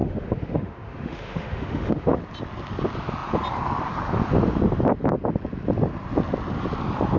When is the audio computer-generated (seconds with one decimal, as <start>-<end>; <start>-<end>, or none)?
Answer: 0.0-2.2